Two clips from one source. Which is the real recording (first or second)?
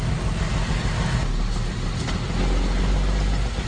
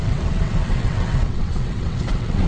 first